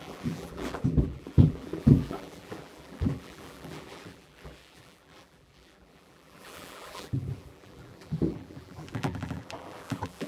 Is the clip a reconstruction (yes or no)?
yes